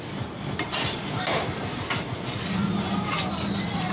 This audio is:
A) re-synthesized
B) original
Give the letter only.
B